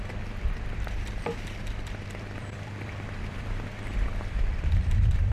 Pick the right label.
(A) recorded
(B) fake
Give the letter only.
B